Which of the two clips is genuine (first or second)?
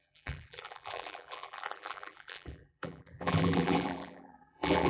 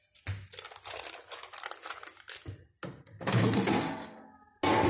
second